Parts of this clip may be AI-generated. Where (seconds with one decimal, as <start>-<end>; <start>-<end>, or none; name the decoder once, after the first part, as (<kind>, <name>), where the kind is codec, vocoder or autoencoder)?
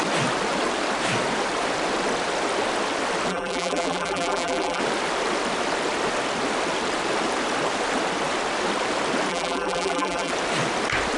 3.3-4.8 (vocoder, BigVGAN v2); 9.3-10.3